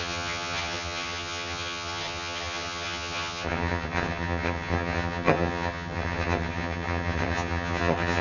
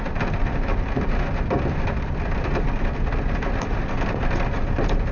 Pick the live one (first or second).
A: second